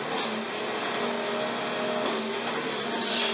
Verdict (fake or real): real